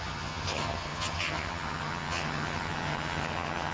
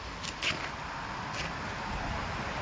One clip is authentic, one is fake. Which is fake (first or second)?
first